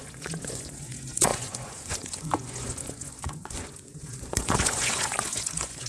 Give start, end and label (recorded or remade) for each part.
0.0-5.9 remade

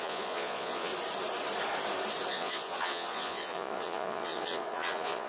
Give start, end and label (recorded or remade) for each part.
0.0-0.9 remade; 0.9-2.3 recorded; 2.3-5.3 remade

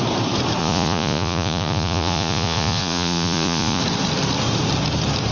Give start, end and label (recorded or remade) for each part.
0.0-0.6 recorded; 0.6-3.8 remade; 3.8-5.3 recorded

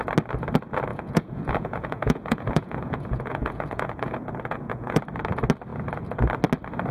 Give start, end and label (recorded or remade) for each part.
0.0-0.9 recorded; 0.9-5.0 remade; 5.0-6.9 recorded

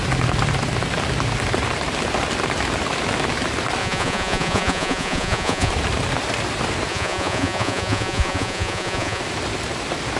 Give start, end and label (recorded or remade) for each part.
0.0-3.8 recorded; 3.8-5.7 remade; 5.7-6.9 recorded; 6.9-9.2 remade; 9.2-10.2 recorded